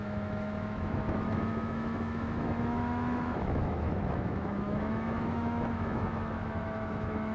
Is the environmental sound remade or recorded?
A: remade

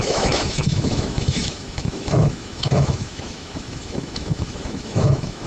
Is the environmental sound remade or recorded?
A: remade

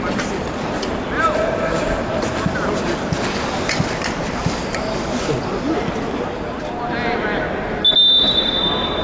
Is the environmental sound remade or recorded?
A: recorded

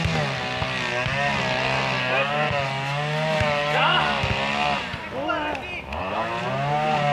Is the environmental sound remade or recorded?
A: recorded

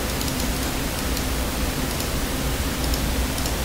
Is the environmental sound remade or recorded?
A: recorded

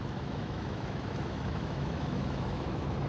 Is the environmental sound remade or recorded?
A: remade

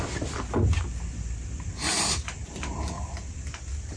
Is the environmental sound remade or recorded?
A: recorded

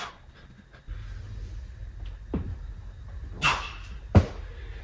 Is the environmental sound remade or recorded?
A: recorded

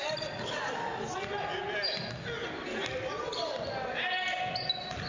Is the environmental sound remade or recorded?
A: recorded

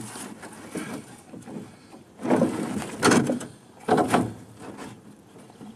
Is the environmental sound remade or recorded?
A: recorded